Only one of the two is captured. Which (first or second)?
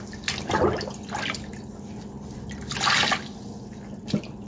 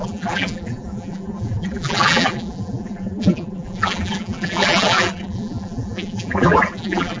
first